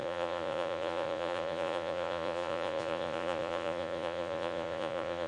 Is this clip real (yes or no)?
no